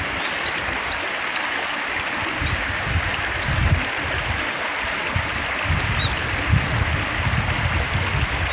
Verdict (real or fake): real